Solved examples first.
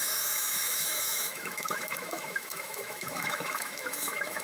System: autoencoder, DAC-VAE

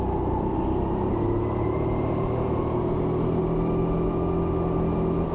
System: none